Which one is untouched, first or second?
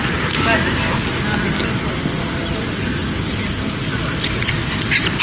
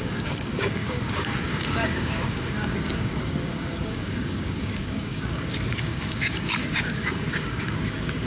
first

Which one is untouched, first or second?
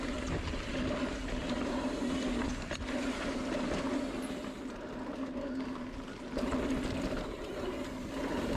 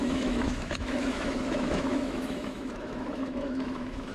first